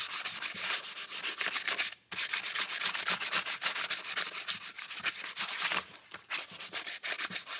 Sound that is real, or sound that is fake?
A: real